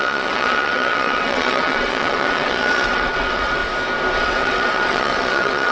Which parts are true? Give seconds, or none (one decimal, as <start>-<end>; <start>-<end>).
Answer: 3.6-4.2